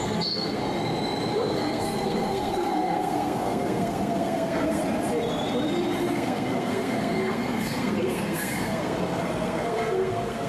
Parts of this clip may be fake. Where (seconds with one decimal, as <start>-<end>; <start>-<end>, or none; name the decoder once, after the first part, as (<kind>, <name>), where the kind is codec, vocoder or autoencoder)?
0.0-0.6 (codec, SNAC); 1.3-4.8; 6.1-10.5